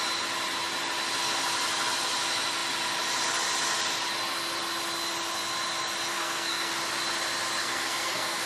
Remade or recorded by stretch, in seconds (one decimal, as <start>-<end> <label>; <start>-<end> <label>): 0.0-6.1 recorded; 6.1-6.7 remade; 6.7-7.6 recorded; 7.6-8.5 remade